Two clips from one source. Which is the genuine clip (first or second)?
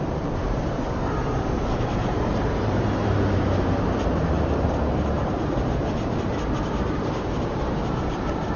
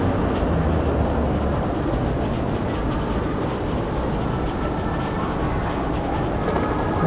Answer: second